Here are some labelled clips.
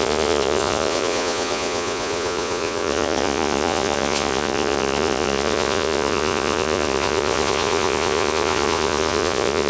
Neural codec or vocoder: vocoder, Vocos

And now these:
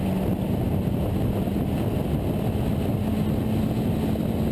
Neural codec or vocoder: none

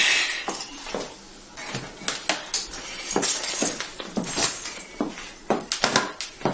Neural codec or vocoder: none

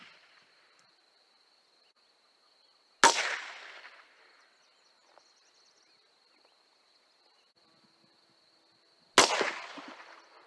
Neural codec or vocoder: none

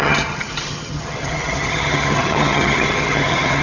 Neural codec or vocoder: vocoder, HiFi-GAN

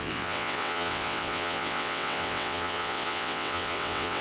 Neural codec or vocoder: vocoder, WaveNeXt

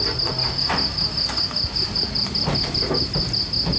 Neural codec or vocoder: none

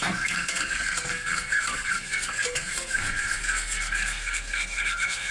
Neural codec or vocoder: codec, SNAC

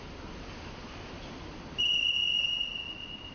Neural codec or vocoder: none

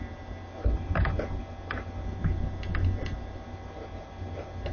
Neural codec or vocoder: none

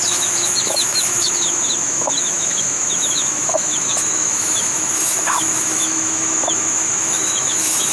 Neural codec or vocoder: autoencoder, DAC-VAE